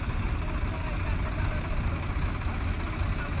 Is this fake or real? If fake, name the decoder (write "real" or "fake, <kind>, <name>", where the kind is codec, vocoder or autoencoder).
real